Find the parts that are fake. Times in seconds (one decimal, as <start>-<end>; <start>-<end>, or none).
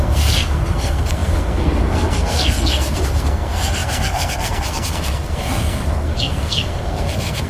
0.0-7.5